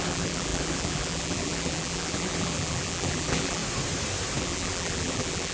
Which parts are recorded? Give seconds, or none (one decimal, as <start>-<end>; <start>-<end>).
3.6-4.4